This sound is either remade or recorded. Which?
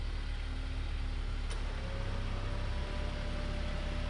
recorded